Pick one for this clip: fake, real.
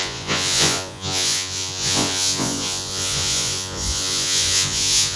fake